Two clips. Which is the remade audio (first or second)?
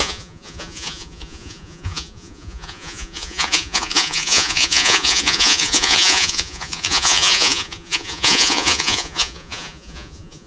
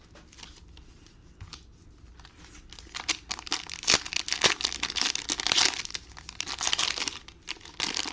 first